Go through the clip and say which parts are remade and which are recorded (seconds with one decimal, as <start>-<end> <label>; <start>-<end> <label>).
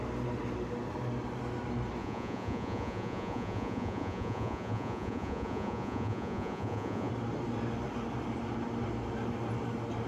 0.0-2.0 recorded; 2.0-7.1 remade; 7.1-10.1 recorded